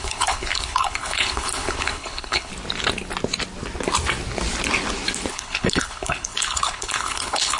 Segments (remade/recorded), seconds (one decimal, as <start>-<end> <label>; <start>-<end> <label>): 0.0-2.5 remade; 2.5-5.3 recorded; 5.3-7.6 remade